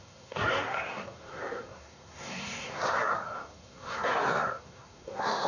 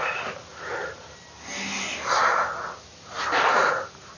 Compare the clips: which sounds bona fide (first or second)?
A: second